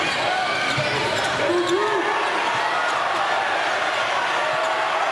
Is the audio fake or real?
real